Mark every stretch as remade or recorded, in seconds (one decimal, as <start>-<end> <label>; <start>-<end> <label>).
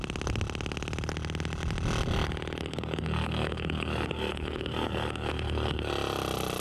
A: 0.0-2.6 recorded; 2.6-5.9 remade; 5.9-6.6 recorded